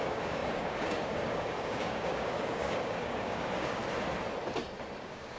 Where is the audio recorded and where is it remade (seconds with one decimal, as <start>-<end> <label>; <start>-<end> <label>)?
0.0-3.8 remade; 3.8-5.0 recorded; 5.0-5.4 remade